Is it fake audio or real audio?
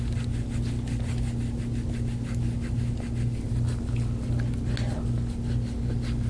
real